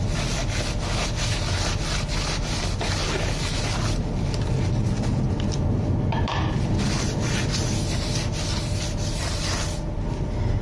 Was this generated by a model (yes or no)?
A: no